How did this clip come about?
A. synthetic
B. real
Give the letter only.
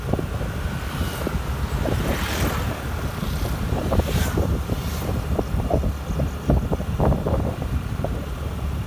B